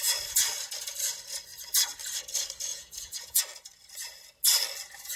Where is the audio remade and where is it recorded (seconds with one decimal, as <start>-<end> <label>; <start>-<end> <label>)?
0.0-2.7 recorded; 2.7-3.4 remade; 3.4-5.2 recorded